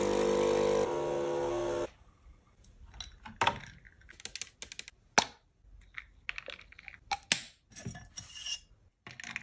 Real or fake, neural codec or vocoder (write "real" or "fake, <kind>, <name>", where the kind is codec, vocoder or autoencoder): real